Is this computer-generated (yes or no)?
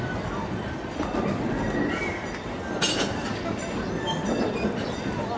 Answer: no